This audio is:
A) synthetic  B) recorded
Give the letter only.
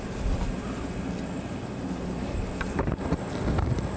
B